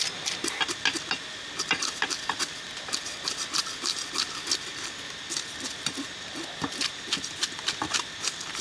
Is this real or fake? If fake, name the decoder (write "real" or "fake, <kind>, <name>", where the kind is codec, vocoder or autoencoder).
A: real